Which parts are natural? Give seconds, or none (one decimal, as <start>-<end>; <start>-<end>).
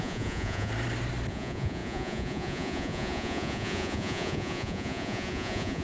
0.7-1.3